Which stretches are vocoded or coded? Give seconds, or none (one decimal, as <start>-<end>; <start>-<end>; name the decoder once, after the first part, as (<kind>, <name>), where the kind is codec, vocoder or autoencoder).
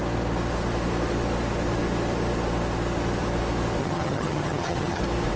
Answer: 3.8-5.0 (vocoder, HiFi-GAN)